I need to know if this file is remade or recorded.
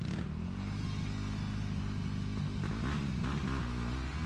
recorded